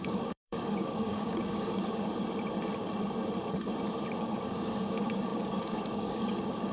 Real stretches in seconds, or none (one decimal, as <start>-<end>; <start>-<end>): 2.1-4.2